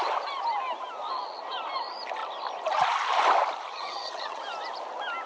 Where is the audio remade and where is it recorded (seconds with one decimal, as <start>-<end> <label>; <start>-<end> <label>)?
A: 0.0-3.7 recorded; 3.7-4.4 remade; 4.4-5.3 recorded

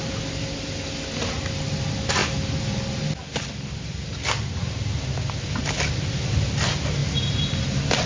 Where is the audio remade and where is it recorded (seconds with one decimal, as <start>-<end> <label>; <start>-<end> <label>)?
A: 0.0-8.1 recorded

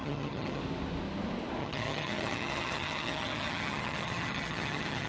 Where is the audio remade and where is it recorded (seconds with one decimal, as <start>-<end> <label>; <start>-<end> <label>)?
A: 0.0-0.6 remade; 0.6-1.6 recorded; 1.6-5.1 remade

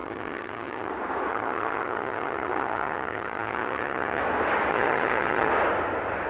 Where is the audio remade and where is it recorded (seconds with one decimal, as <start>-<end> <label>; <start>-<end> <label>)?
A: 0.0-0.9 remade; 0.9-1.3 recorded; 1.3-4.2 remade; 4.2-4.7 recorded; 4.7-5.5 remade; 5.5-6.3 recorded

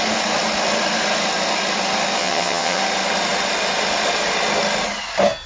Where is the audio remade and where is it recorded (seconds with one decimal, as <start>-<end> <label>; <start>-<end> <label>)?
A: 0.0-2.2 recorded; 2.2-2.8 remade; 2.8-5.5 recorded

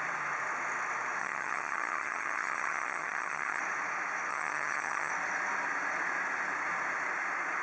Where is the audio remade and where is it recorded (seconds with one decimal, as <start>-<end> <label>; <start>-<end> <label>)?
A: 0.0-1.2 recorded; 1.2-3.6 remade; 3.6-4.3 recorded; 4.3-5.1 remade; 5.1-7.6 recorded

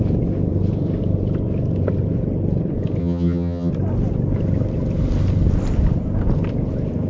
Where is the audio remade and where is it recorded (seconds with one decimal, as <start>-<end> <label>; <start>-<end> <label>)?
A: 0.0-3.0 recorded; 3.0-3.7 remade; 3.7-7.1 recorded